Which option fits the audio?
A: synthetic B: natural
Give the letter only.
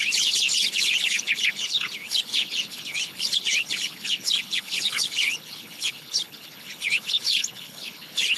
A